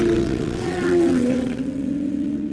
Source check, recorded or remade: remade